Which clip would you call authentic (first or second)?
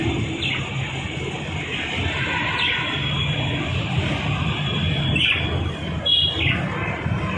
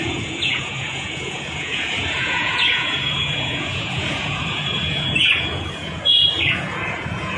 first